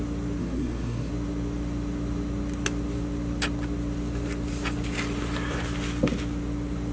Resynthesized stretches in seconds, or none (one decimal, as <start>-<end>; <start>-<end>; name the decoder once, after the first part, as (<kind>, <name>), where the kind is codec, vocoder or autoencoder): 0.4-1.1 (codec, SNAC)